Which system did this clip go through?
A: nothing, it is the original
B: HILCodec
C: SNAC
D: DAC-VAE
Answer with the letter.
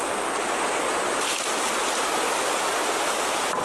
A